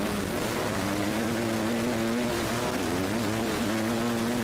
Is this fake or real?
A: real